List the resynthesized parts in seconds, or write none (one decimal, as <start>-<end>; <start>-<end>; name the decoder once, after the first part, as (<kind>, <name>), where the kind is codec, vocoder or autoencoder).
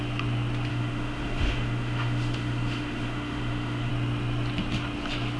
0.7-3.9 (autoencoder, DAC-VAE)